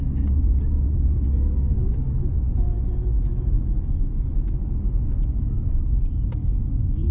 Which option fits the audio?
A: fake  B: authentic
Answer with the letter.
B